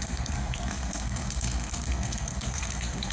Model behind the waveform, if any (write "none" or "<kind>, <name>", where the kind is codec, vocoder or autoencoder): codec, SNAC